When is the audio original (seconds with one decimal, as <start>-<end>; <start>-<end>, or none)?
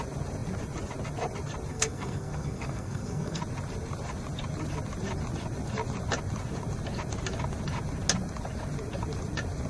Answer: 0.0-1.7; 3.4-9.7